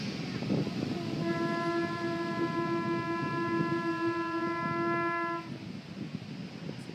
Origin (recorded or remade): recorded